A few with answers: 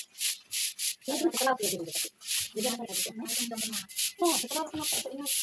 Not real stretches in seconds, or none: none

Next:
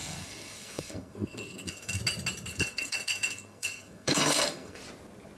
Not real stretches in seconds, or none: 0.0-2.0; 2.5-4.8